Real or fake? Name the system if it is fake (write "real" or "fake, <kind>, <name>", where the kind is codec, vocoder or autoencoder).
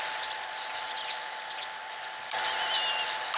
real